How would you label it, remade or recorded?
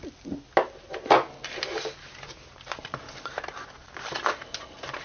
recorded